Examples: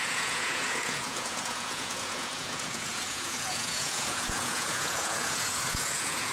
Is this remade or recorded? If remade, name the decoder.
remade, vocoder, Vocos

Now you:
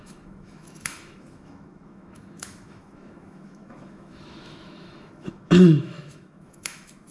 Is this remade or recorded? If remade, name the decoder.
remade, autoencoder, DAC-VAE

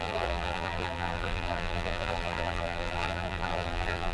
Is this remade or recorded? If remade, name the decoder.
remade, vocoder, BigVGAN v2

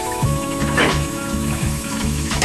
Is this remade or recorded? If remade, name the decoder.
remade, autoencoder, DAC-VAE